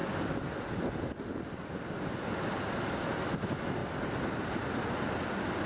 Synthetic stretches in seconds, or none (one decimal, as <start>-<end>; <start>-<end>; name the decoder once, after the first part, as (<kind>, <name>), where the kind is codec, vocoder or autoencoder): none